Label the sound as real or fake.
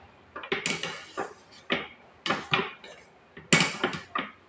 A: real